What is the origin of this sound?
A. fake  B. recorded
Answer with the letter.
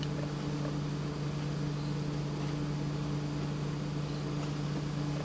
B